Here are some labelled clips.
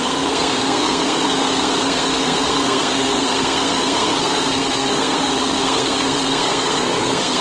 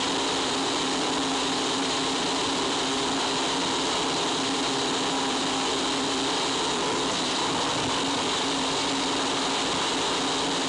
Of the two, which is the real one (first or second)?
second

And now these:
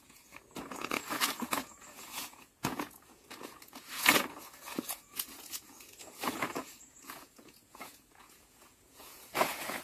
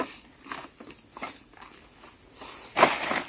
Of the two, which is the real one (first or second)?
second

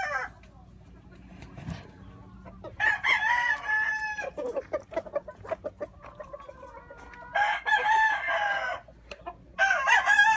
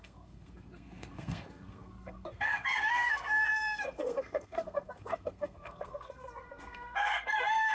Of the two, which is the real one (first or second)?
first